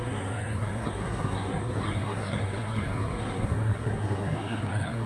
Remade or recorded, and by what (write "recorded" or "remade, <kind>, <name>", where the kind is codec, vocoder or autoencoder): remade, codec, SNAC